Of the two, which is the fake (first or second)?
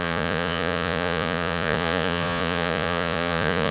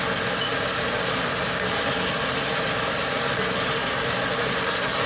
first